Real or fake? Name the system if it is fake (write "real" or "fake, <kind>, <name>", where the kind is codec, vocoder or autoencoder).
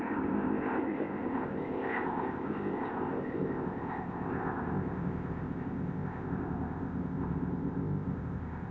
fake, codec, ZipCodec